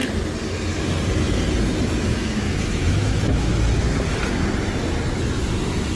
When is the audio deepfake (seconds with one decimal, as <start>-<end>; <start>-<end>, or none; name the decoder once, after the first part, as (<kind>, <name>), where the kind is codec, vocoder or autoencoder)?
2.1-3.5 (autoencoder, DAC-VAE)